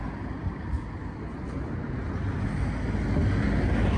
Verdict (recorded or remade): recorded